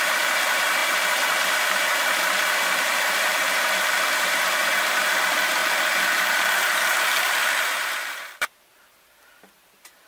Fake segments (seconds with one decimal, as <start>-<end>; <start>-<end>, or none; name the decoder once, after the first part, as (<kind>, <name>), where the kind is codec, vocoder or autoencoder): 0.0-10.1 (vocoder, BigVGAN v2)